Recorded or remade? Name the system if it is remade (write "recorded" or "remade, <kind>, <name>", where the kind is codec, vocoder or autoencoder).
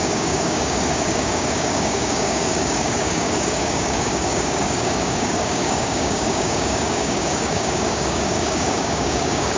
remade, codec, DAC